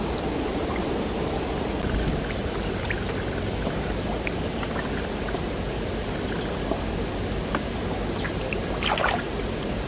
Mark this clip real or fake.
real